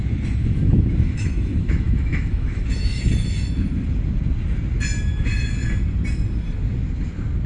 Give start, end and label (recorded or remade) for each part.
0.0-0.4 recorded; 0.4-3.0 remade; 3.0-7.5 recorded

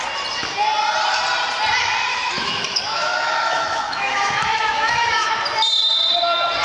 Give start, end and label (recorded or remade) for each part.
0.0-2.1 recorded; 2.1-5.3 remade; 5.3-6.6 recorded

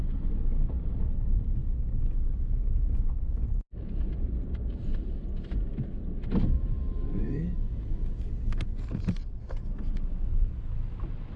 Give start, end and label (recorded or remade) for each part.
0.0-11.4 recorded

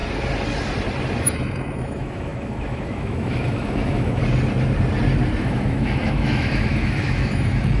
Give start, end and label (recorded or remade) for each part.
0.0-1.2 recorded; 1.2-4.2 remade; 4.2-5.4 recorded; 5.4-7.8 remade